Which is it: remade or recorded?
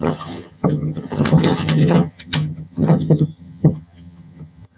remade